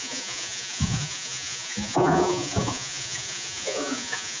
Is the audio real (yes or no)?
no